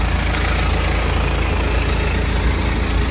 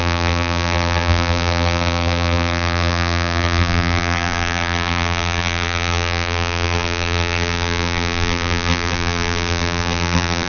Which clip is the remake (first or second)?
second